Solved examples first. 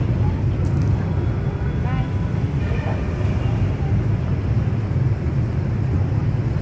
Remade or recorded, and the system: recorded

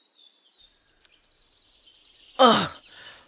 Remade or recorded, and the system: recorded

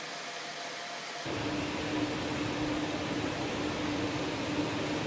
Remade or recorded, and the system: recorded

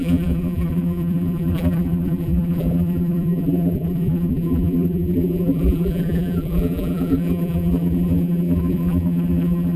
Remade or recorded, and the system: remade, vocoder, BigVGAN v2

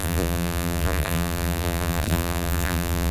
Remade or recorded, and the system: remade, vocoder, BigVGAN v2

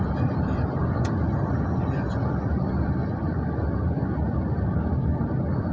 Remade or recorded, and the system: remade, vocoder, BigVGAN v2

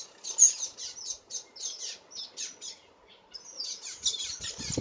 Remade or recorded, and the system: recorded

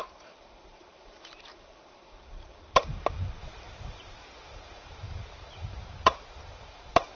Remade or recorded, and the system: remade, vocoder, BigVGAN v2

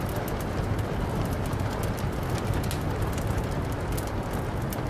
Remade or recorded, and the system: recorded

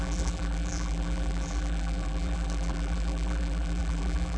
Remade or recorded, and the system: remade, vocoder, BigVGAN v2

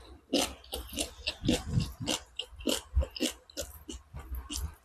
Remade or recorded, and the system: recorded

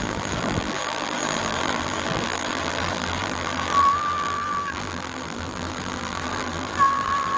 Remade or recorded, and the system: remade, vocoder, BigVGAN v2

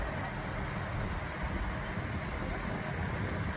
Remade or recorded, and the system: recorded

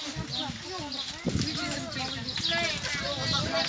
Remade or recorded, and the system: recorded